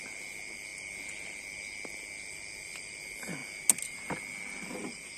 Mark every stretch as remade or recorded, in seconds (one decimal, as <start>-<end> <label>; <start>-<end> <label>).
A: 0.0-5.2 recorded